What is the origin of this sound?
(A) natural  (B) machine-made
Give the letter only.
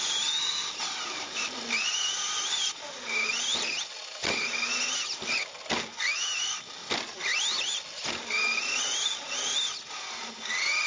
A